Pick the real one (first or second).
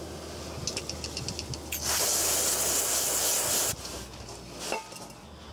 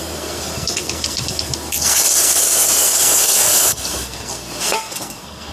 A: first